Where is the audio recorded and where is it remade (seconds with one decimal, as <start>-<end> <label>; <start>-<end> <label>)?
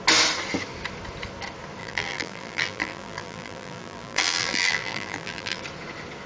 0.0-1.8 recorded; 1.8-5.6 remade; 5.6-6.3 recorded